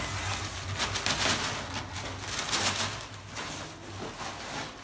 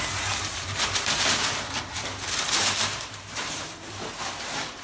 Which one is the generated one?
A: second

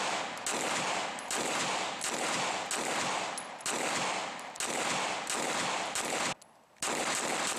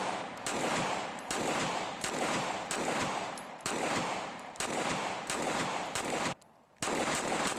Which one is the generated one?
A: second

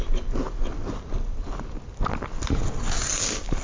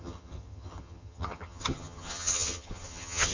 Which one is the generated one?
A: second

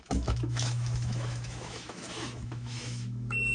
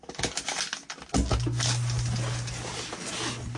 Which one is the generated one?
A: first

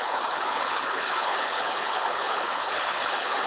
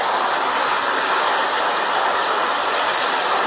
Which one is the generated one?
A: first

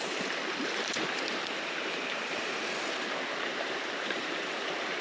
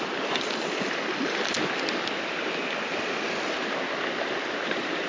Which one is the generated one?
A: first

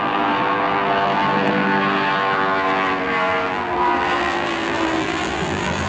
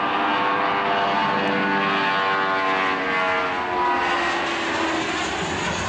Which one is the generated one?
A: first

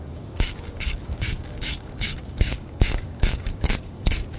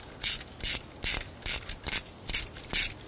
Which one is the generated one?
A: first